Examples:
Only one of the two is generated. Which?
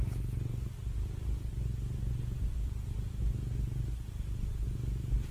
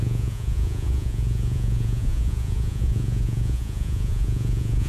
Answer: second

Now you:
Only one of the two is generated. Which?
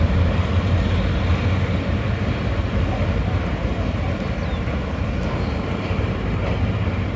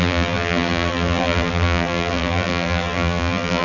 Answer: second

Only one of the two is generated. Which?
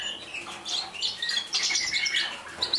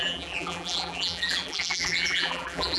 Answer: second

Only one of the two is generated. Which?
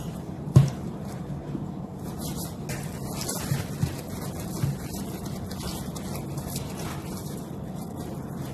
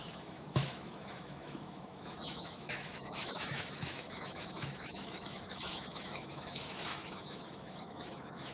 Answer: second